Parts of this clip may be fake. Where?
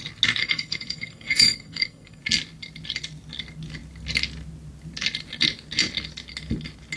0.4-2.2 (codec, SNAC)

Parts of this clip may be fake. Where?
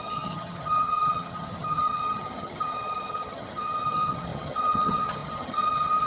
0.0-6.1 (vocoder, HiFi-GAN)